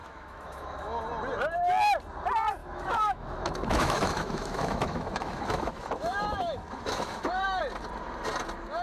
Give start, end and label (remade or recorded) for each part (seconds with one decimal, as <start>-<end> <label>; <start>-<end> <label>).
0.0-1.0 remade; 1.0-2.6 recorded; 2.6-7.6 remade; 7.6-8.8 recorded